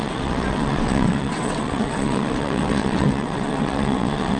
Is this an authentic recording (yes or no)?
no